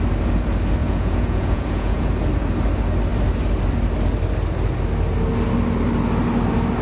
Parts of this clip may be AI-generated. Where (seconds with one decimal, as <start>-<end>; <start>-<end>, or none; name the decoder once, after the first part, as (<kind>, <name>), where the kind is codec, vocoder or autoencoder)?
0.8-2.1 (vocoder, Vocos)

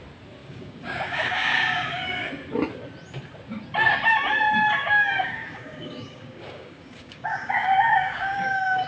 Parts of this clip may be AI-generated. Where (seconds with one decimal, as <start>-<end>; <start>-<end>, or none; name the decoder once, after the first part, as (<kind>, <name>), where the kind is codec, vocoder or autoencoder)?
0.4-2.3 (codec, DAC); 4.8-8.9

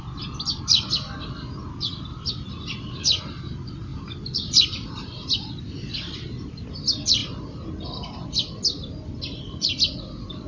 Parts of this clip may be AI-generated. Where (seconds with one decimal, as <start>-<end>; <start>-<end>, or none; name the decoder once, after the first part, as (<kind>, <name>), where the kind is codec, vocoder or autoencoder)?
3.9-5.6 (vocoder, BigVGAN v2)

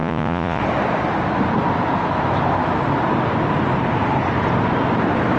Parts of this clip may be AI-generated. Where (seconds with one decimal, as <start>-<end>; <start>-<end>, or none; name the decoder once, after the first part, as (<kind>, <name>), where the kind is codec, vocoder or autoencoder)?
0.0-0.6 (vocoder, Vocos)

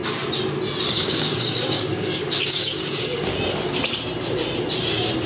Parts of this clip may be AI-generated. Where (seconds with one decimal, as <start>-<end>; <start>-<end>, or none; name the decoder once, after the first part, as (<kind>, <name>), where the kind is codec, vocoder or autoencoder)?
0.9-3.3 (codec, DAC)